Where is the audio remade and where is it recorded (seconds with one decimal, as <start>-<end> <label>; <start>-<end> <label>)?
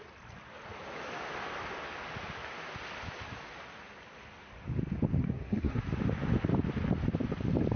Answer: 0.0-5.2 recorded; 5.2-5.8 remade; 5.8-7.8 recorded